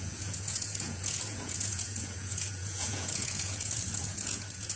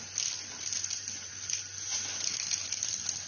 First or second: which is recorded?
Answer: second